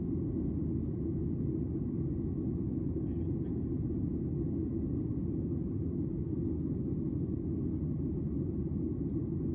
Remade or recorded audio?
recorded